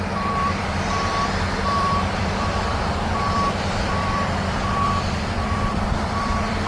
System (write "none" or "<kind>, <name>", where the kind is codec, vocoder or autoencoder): vocoder, BigVGAN v2